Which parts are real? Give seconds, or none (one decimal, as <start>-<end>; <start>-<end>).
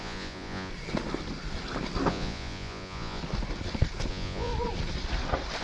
0.7-2.1; 3.2-4.1; 4.5-5.6